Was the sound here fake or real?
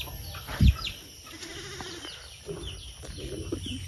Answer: real